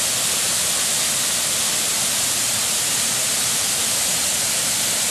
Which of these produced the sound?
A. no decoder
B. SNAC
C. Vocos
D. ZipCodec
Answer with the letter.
A